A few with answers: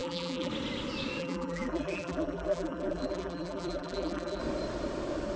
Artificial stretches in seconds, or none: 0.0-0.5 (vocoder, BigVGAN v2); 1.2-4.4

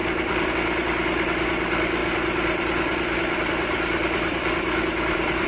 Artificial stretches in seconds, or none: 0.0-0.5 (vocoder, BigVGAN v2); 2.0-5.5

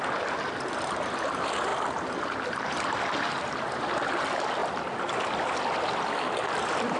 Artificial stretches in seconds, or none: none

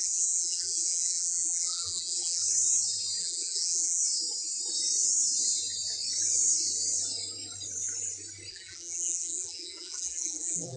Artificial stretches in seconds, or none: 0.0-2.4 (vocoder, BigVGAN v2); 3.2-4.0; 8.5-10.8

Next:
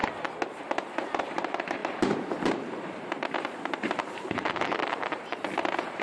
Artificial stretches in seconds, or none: 1.2-6.0 (vocoder, BigVGAN v2)

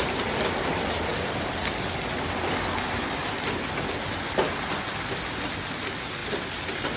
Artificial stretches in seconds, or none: none

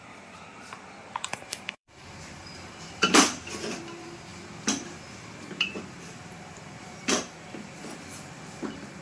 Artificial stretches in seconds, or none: 0.0-0.5 (vocoder, BigVGAN v2); 1.0-9.0

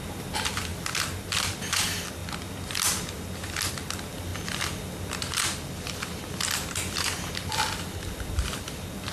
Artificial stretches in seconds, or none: 0.0-2.2 (vocoder, BigVGAN v2); 3.7-9.1